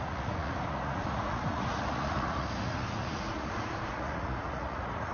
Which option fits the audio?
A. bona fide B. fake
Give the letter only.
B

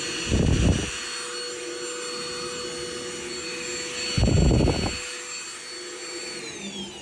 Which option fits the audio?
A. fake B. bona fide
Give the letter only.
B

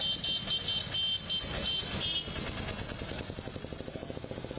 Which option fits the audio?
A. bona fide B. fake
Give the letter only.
A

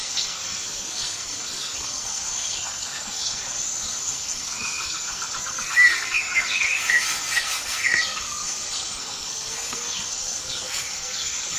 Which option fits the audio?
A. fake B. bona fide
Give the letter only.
A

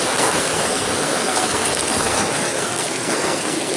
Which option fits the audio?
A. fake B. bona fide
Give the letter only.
A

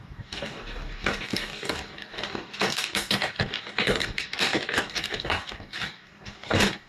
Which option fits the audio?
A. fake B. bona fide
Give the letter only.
A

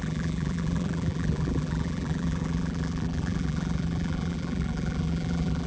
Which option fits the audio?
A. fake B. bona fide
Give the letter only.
A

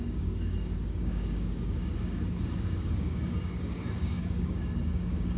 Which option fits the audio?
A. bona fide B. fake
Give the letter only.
B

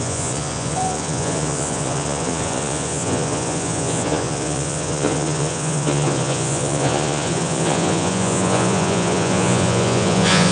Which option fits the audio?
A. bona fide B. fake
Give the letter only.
B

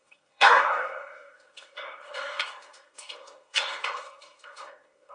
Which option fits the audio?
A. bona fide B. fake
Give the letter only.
B